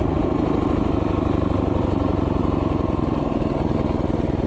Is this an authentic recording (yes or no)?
yes